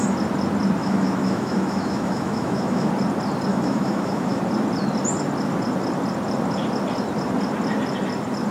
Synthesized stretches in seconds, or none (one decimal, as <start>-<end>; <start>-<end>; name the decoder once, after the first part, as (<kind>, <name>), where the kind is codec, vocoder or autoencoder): 0.8-2.9 (autoencoder, DAC-VAE); 3.5-4.4